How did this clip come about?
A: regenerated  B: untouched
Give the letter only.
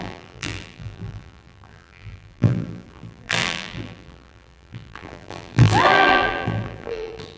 A